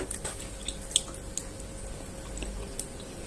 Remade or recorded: recorded